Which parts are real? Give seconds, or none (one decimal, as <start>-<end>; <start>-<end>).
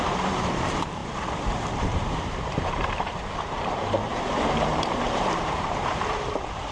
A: none